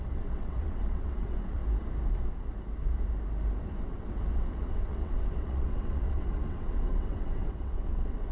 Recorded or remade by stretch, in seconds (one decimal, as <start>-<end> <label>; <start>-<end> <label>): 0.0-1.6 remade; 1.6-3.8 recorded; 3.8-8.3 remade